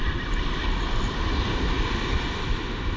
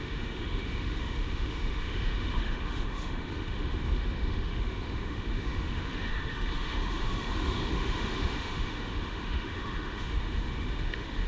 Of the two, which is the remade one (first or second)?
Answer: second